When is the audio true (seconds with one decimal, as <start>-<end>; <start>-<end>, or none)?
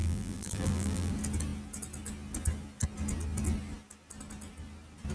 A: 1.1-5.1